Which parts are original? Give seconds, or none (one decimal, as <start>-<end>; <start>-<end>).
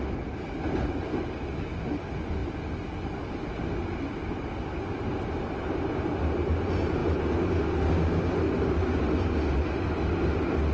0.0-10.7